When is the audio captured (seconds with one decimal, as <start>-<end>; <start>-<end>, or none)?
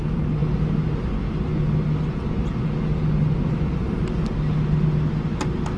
0.0-5.8